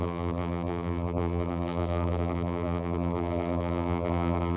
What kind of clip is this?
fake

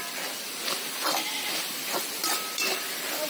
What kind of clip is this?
fake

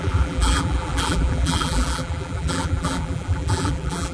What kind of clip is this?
fake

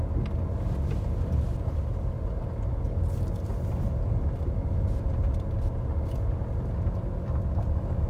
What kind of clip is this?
real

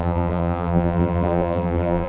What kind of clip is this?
fake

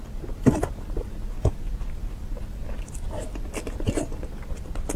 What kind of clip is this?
real